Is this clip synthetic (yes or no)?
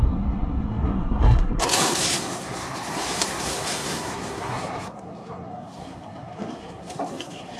yes